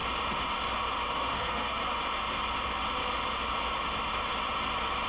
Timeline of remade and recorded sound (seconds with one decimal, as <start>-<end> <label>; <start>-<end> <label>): 0.0-1.1 recorded; 1.1-1.7 remade; 1.7-5.1 recorded